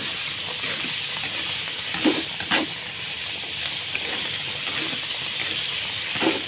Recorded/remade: recorded